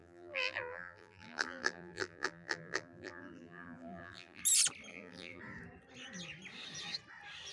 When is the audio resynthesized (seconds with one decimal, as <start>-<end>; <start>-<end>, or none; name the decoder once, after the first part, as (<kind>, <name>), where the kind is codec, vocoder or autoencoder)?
0.0-4.4 (vocoder, BigVGAN v2); 4.9-5.4